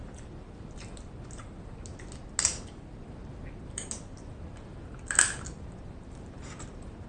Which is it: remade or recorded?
recorded